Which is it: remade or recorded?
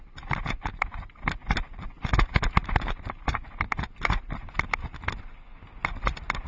recorded